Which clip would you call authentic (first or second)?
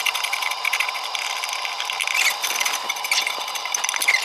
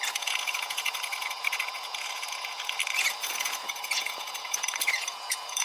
first